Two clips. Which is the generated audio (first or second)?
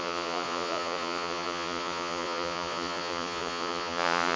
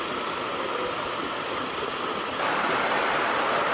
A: first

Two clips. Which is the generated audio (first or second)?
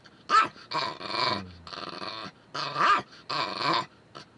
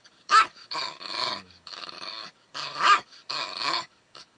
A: second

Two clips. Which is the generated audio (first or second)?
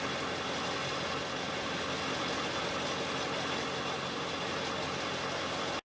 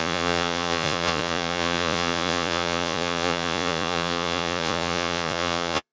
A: second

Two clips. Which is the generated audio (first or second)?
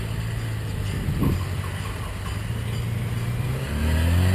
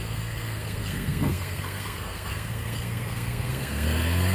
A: second